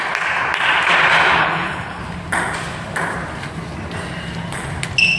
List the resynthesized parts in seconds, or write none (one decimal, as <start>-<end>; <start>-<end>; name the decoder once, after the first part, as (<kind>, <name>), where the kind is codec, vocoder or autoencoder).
1.4-2.0 (codec, HILCodec)

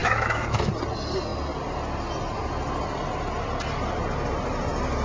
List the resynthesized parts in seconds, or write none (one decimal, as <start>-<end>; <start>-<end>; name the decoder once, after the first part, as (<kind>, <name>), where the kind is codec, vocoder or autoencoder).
0.0-0.7 (autoencoder, DAC-VAE)